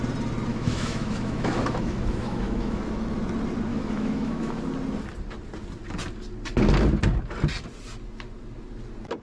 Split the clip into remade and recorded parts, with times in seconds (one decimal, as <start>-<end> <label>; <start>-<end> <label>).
0.0-0.5 recorded; 0.5-2.8 remade; 2.8-3.7 recorded; 3.7-4.6 remade; 4.6-9.2 recorded